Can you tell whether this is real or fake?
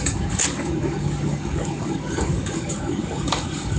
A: fake